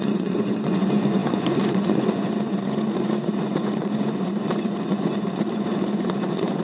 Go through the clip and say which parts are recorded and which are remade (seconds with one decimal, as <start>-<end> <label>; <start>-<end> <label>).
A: 0.0-6.6 remade